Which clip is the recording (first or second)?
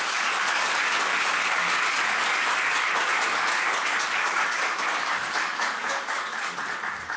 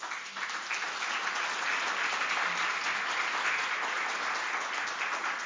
second